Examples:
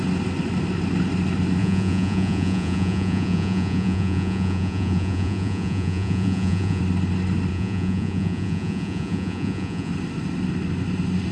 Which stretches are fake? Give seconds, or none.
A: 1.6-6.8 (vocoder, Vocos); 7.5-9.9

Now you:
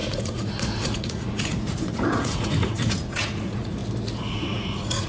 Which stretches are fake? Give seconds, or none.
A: 0.0-3.8 (vocoder, Vocos); 4.3-5.1

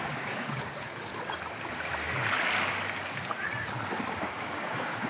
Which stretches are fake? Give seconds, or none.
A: 0.0-1.1 (codec, DAC); 4.2-5.1

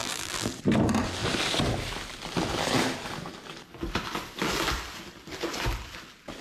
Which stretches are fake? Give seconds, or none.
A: 0.0-0.5 (vocoder, BigVGAN v2)